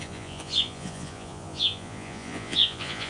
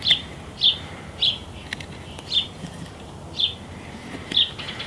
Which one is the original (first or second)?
second